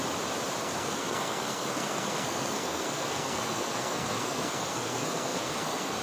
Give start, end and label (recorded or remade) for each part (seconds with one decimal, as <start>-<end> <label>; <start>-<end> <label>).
0.0-0.6 recorded; 0.6-6.0 remade